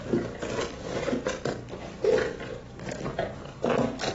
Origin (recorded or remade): recorded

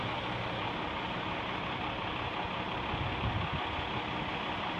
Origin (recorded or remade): recorded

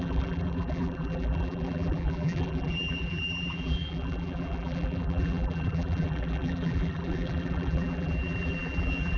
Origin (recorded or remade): remade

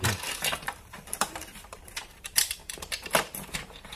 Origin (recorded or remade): remade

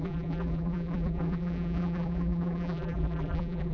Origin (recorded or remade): remade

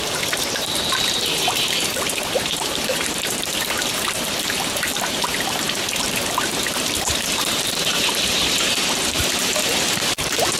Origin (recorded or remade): remade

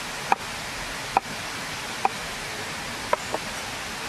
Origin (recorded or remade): recorded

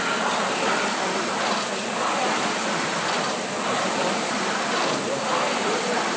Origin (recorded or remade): remade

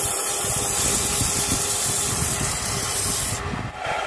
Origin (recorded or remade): recorded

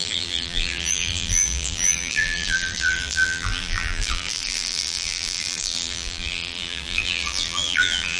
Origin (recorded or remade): remade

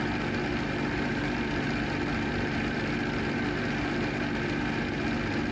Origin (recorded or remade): recorded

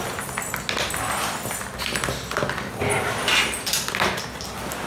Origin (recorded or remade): recorded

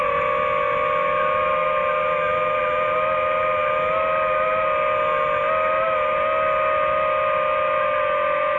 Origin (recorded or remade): recorded